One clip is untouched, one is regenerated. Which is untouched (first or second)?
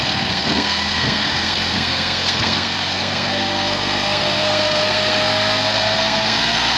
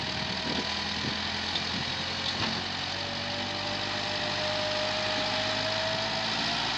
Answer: second